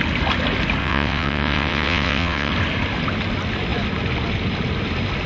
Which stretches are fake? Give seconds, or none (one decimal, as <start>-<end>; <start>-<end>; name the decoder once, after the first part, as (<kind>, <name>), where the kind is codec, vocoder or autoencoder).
0.8-2.5 (vocoder, WaveNeXt)